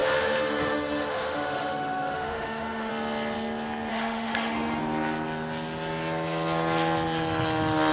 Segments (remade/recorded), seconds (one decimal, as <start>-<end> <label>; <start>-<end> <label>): 0.0-2.9 remade; 2.9-3.9 recorded; 3.9-4.8 remade; 4.8-7.9 recorded